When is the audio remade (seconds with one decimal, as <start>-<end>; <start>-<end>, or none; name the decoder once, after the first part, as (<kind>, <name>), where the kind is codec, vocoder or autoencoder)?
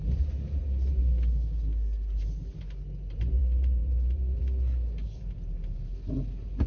3.4-4.4 (vocoder, BigVGAN v2)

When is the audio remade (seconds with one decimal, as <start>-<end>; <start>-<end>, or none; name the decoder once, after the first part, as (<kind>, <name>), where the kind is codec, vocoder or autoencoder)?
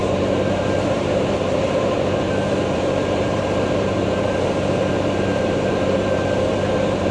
0.0-7.1 (vocoder, BigVGAN v2)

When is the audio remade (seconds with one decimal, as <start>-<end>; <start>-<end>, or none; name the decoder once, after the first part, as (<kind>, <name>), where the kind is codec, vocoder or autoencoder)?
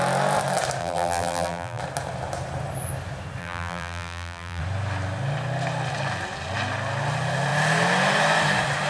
0.8-1.8 (vocoder, BigVGAN v2); 3.4-4.6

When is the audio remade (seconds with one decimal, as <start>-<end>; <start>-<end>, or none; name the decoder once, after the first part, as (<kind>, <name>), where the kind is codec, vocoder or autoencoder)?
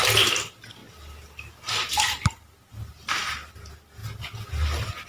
0.8-3.5 (vocoder, BigVGAN v2)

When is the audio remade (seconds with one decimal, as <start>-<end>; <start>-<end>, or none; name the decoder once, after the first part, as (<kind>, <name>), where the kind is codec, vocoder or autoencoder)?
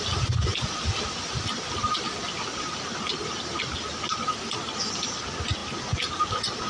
none